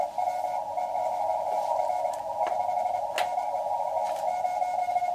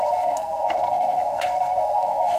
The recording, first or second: first